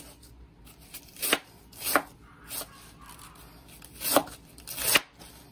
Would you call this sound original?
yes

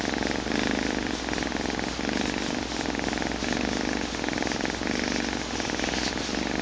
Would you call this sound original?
yes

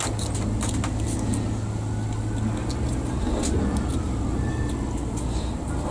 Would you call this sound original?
yes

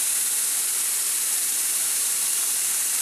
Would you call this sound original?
no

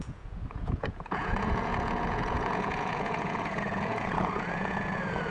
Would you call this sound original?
no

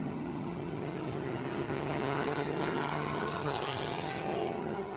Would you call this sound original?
no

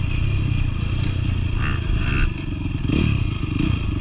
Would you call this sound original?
yes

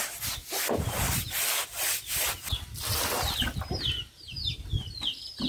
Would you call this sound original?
yes